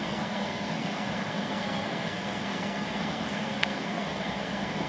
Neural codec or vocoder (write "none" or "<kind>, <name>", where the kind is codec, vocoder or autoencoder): codec, SNAC